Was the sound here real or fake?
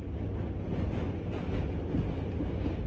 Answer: real